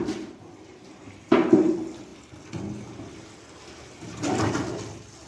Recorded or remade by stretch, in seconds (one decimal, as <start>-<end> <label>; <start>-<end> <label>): 0.0-5.3 recorded